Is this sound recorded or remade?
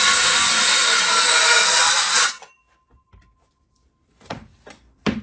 recorded